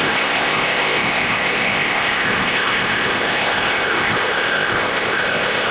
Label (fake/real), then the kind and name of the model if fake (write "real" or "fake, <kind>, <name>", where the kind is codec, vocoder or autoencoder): fake, codec, ZipCodec